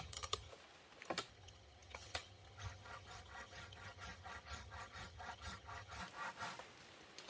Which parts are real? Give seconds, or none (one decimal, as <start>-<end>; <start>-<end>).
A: 0.5-1.3; 6.0-7.3